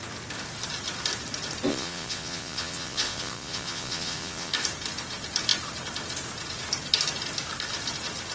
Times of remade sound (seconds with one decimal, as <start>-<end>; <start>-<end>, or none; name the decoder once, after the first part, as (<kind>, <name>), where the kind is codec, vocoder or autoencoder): 1.7-4.5 (vocoder, Vocos)